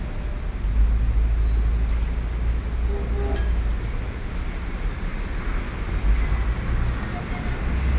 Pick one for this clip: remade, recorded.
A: recorded